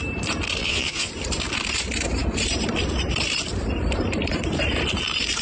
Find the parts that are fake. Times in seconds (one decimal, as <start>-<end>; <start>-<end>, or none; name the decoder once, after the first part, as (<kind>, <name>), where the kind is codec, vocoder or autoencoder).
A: 0.6-1.1 (vocoder, Vocos)